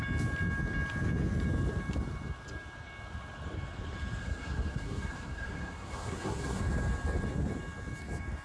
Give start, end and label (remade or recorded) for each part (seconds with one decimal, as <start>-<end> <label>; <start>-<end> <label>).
0.0-4.2 recorded; 4.2-6.6 remade; 6.6-8.4 recorded